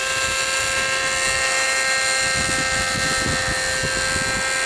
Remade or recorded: recorded